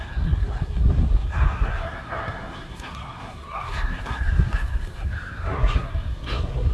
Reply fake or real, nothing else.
fake